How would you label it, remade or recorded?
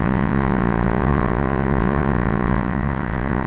remade